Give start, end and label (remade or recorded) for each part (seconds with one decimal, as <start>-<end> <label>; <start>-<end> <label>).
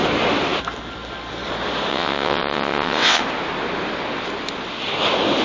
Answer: 0.0-1.9 recorded; 1.9-3.2 remade; 3.2-5.4 recorded